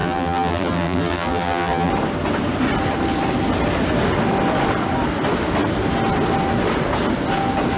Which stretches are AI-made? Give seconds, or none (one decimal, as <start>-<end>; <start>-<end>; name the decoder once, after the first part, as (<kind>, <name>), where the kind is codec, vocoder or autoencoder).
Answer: 0.0-1.9 (vocoder, BigVGAN v2)